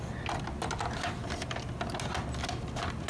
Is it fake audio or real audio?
real